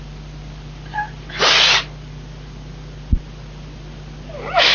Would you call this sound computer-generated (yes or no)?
no